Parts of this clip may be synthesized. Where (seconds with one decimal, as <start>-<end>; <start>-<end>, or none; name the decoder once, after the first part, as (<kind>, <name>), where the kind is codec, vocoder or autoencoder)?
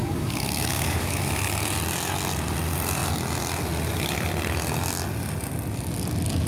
0.0-1.2 (codec, DAC)